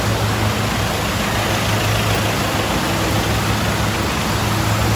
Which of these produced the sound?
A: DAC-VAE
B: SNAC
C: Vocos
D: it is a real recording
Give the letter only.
D